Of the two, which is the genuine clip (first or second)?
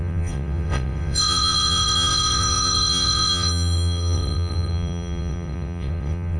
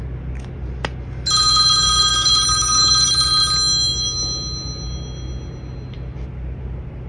second